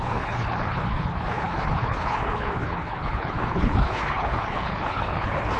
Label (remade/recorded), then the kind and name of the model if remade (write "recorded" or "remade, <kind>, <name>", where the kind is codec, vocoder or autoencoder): remade, codec, HILCodec